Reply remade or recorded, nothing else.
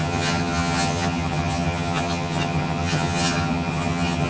remade